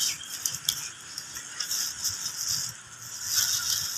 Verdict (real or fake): real